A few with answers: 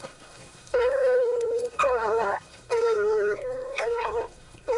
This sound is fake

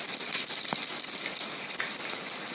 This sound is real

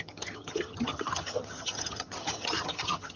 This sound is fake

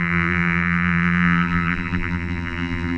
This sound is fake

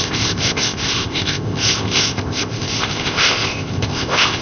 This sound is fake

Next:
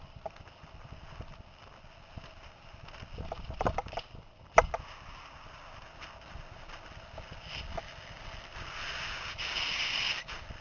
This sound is real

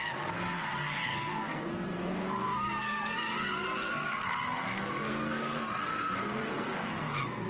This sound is fake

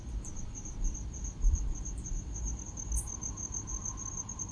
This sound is real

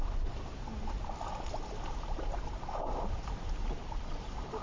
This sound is real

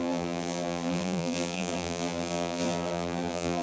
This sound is fake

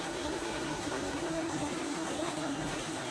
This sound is fake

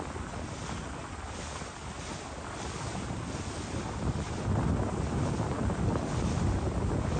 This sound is real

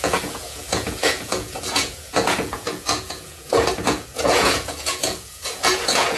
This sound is fake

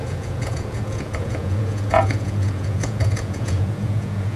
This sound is fake